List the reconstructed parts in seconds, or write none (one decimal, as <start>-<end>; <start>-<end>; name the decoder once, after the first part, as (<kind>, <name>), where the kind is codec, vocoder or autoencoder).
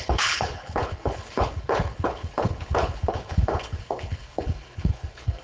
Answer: 0.0-5.4 (codec, HILCodec)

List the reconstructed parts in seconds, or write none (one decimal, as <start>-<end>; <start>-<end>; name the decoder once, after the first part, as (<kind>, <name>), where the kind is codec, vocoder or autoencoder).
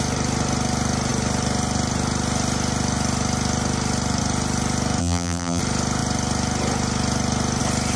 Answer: 5.0-5.6 (vocoder, BigVGAN v2)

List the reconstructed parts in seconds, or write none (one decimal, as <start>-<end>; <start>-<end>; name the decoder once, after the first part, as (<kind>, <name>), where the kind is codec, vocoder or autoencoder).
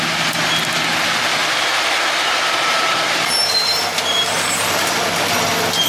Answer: 1.4-4.9 (vocoder, BigVGAN v2)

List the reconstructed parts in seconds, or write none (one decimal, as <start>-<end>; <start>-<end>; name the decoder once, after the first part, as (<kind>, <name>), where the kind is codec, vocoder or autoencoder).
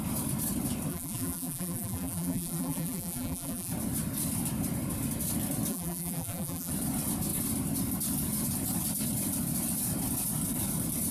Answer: 0.9-3.7 (vocoder, BigVGAN v2); 5.7-6.7